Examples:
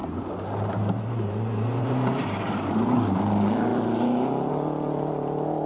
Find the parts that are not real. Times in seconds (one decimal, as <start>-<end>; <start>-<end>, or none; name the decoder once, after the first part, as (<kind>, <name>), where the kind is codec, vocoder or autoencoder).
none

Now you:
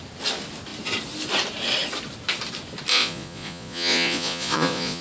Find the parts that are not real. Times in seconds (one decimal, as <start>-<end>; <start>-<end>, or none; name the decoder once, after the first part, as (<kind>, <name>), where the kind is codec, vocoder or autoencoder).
2.9-5.0 (vocoder, Vocos)

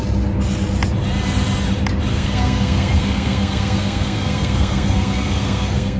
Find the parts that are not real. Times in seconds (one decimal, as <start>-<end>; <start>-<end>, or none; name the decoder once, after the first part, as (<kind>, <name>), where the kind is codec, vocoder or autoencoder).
2.1-6.0 (codec, SNAC)

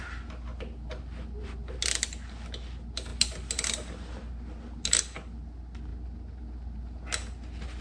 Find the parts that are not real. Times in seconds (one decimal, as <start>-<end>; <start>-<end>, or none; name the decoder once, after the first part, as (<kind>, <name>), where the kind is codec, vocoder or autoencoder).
none